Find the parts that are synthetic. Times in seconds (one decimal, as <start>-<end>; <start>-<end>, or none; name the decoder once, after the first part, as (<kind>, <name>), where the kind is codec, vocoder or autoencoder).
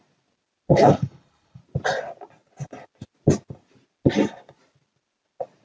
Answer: 0.7-1.6 (codec, HILCodec)